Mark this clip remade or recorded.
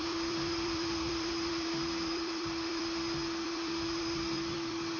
remade